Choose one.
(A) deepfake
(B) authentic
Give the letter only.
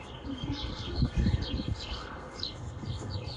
A